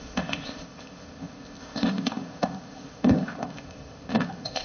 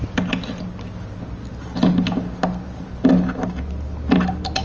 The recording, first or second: second